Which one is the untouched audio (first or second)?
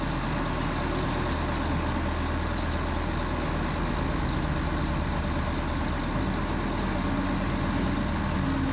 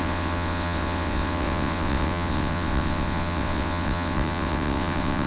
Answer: first